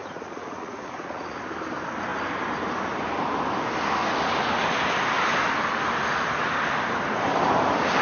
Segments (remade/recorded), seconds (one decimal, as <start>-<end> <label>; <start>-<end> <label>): 0.0-1.4 remade; 1.4-8.0 recorded